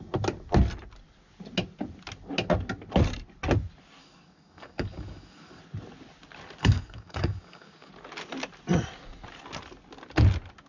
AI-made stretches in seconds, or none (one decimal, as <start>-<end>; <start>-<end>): 4.0-5.6; 6.6-7.9